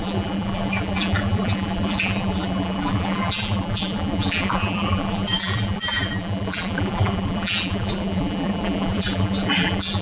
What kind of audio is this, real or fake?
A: fake